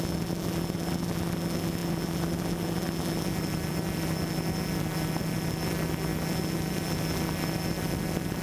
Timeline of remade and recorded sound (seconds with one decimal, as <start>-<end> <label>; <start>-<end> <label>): 0.0-8.4 recorded